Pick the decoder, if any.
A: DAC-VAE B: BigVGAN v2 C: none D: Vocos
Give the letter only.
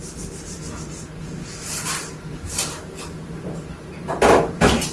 C